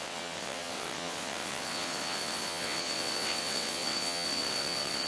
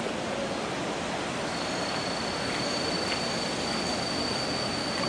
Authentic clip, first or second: second